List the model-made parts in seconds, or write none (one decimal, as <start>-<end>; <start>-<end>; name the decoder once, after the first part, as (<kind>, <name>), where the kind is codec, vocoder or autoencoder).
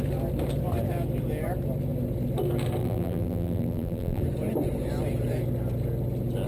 2.8-4.2 (vocoder, BigVGAN v2)